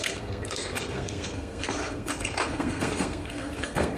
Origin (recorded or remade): remade